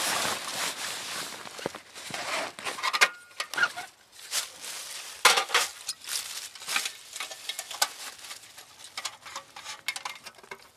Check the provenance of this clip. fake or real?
real